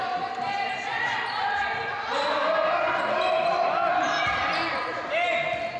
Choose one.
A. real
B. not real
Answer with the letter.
A